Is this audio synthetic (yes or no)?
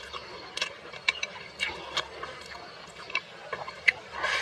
yes